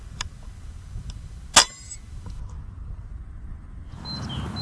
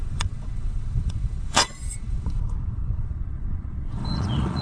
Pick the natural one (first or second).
first